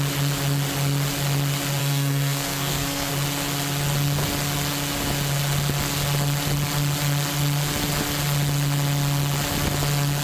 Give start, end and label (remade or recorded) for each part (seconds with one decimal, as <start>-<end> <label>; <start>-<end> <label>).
0.0-1.8 recorded; 1.8-3.1 remade; 3.1-10.2 recorded